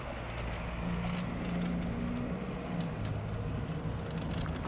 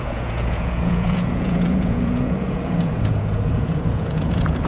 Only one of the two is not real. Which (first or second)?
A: second